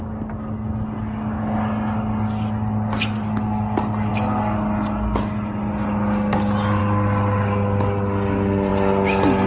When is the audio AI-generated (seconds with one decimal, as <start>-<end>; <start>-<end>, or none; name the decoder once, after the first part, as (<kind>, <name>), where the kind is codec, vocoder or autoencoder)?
none